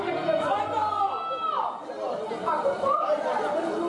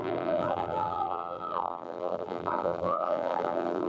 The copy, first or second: second